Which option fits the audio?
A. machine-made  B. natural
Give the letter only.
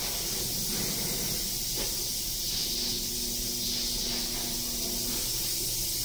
B